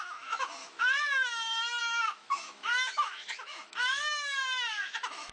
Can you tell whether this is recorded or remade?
remade